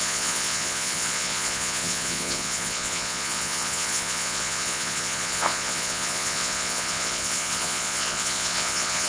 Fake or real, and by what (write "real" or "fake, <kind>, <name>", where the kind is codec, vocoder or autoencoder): fake, vocoder, Vocos